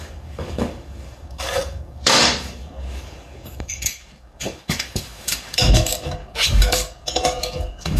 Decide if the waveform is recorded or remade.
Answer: remade